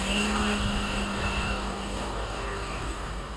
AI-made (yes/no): yes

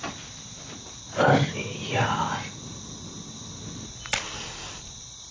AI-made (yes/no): no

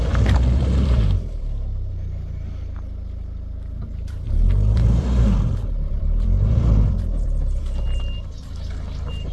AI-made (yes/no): yes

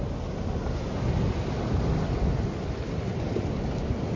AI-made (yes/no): no